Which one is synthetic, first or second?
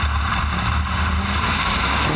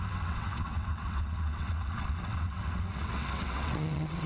second